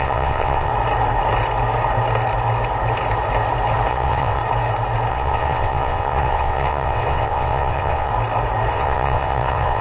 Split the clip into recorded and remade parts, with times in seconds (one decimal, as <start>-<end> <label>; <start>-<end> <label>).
0.0-0.7 remade; 0.7-3.9 recorded; 3.9-4.4 remade; 4.4-5.1 recorded; 5.1-8.1 remade; 8.1-8.7 recorded; 8.7-9.8 remade